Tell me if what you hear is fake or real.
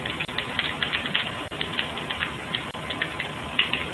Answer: real